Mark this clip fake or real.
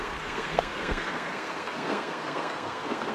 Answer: fake